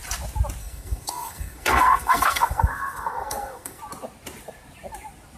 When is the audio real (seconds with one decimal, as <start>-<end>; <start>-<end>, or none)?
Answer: 0.0-0.6; 3.8-5.4